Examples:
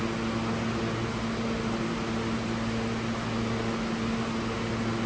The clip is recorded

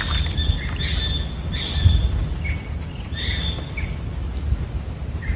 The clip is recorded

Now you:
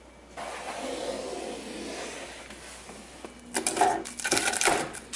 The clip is recorded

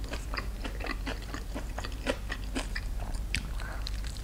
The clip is remade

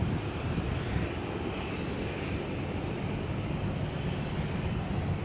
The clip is remade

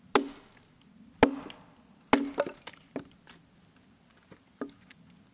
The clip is recorded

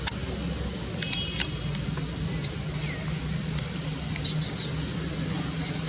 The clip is recorded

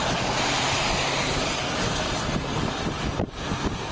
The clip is recorded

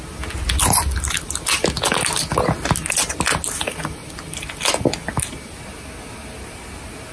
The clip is recorded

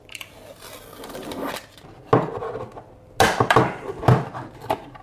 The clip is recorded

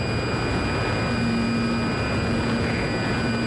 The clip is recorded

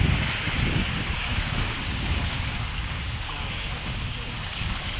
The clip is remade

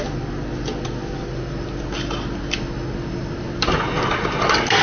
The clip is recorded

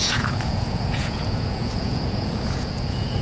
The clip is remade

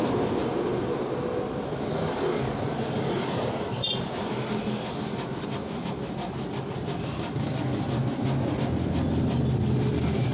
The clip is recorded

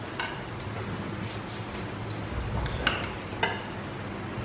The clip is recorded